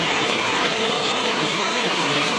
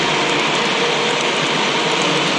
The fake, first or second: first